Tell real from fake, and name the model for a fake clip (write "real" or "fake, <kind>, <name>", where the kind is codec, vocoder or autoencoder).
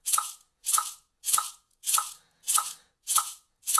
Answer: fake, vocoder, Vocos